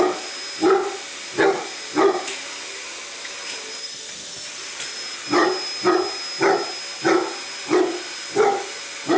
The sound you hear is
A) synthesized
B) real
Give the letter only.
B